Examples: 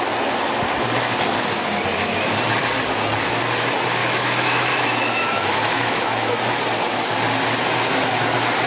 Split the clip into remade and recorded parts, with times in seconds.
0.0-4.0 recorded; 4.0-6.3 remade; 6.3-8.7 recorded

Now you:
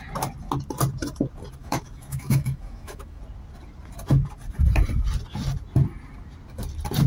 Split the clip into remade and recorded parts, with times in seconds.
0.0-1.6 recorded; 1.6-3.2 remade; 3.2-7.1 recorded

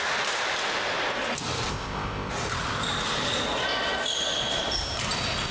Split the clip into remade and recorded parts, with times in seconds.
0.0-1.7 recorded; 1.7-2.3 remade; 2.3-5.5 recorded